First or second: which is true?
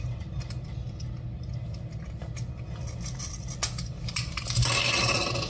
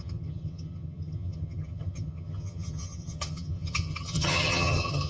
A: first